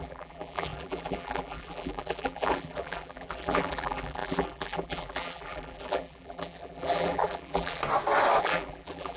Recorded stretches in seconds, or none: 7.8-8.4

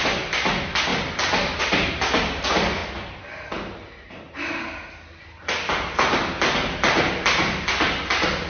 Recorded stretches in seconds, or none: 0.0-8.5

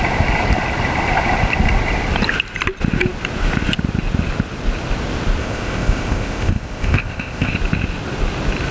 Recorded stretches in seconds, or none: 0.0-5.4; 7.5-8.7

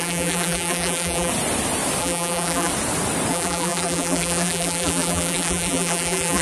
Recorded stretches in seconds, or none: 1.3-2.0; 2.7-3.3

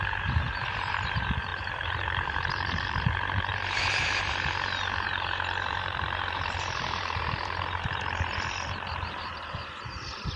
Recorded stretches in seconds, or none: none

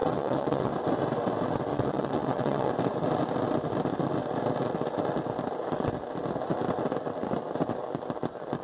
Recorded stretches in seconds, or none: 0.7-1.7; 2.7-8.6